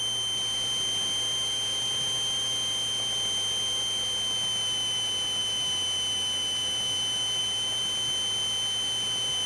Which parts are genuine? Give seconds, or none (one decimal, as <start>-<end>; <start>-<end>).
0.0-9.5